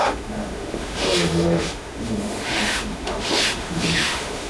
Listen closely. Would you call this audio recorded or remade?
remade